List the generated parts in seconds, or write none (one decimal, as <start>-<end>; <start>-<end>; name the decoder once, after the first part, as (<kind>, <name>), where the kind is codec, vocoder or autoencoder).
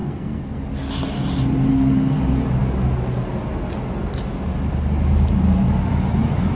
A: 0.0-0.6 (codec, SNAC); 1.7-2.2